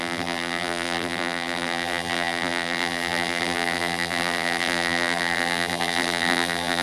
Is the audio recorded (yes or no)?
no